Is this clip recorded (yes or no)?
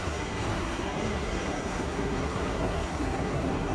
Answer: no